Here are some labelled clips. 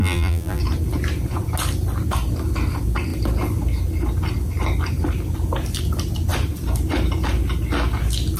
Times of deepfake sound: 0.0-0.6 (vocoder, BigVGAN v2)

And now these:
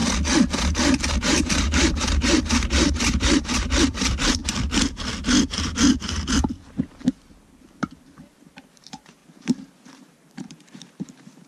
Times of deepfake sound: 1.1-4.4 (vocoder, BigVGAN v2); 7.6-9.2; 10.3-11.5

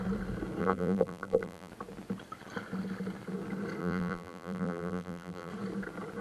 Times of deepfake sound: 0.6-1.7 (vocoder, BigVGAN v2); 3.8-5.5

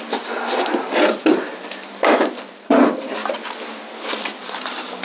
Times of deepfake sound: 0.0-3.2 (vocoder, BigVGAN v2); 4.1-5.0